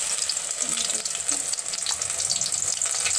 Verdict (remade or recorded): recorded